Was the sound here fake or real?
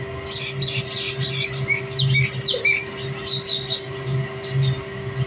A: real